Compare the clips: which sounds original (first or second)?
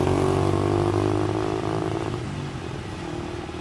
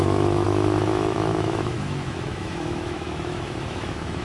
first